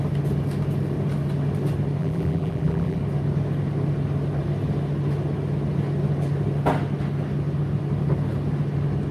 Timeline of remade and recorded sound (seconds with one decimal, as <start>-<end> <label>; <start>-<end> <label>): 0.0-2.0 recorded; 2.0-3.0 remade; 3.0-9.1 recorded